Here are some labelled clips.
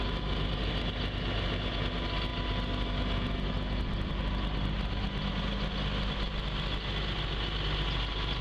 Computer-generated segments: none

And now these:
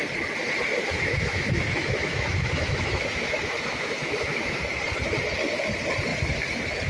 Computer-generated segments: 0.8-4.6 (autoencoder, DAC-VAE)